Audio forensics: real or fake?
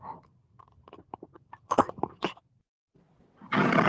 real